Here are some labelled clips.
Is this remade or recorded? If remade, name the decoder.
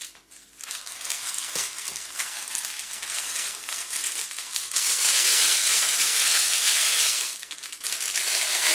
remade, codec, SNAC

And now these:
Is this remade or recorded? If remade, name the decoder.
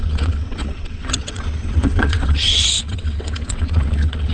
remade, vocoder, WaveNeXt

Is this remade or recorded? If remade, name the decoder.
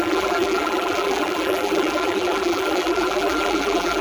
remade, vocoder, BigVGAN v2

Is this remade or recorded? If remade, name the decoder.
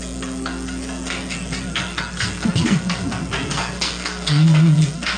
remade, codec, SNAC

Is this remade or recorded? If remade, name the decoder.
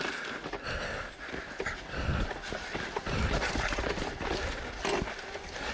recorded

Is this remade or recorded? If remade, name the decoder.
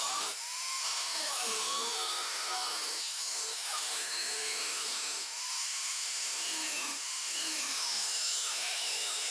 remade, autoencoder, DAC-VAE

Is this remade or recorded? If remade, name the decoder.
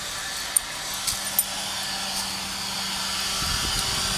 recorded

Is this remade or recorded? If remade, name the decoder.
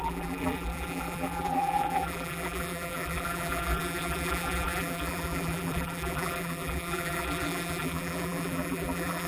remade, vocoder, BigVGAN v2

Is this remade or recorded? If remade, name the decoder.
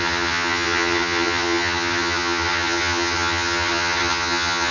remade, vocoder, HiFi-GAN